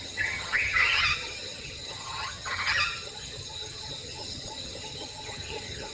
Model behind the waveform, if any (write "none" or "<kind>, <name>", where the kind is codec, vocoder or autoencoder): vocoder, HiFi-GAN